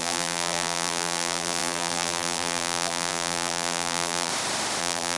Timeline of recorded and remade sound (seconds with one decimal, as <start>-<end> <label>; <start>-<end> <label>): 0.0-4.3 remade; 4.3-4.8 recorded; 4.8-5.2 remade